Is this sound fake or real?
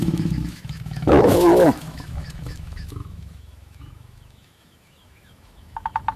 fake